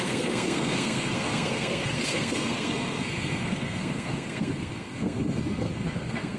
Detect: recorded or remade remade